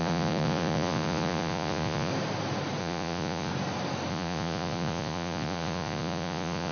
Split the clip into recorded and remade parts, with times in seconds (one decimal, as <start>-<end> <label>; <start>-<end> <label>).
0.0-2.1 remade; 2.1-2.8 recorded; 2.8-3.5 remade; 3.5-4.1 recorded; 4.1-6.7 remade